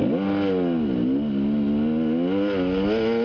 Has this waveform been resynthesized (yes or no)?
no